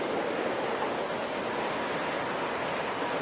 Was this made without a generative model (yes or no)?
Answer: yes